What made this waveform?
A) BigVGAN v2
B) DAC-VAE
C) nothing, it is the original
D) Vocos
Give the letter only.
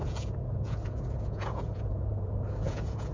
D